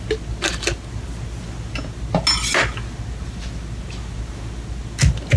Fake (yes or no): no